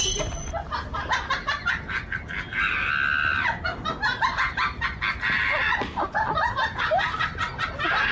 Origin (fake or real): real